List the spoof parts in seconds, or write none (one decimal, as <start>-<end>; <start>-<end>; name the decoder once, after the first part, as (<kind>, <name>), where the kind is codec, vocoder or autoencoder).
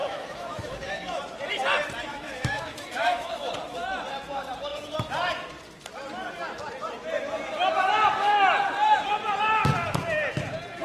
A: 0.0-1.2 (autoencoder, DAC-VAE); 2.1-3.5